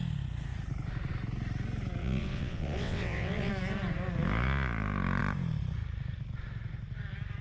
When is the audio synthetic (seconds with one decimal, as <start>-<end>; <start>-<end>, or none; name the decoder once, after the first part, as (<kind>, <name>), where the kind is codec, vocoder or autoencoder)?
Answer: 2.0-3.5 (vocoder, WaveNeXt)